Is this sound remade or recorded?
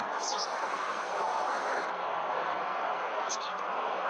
remade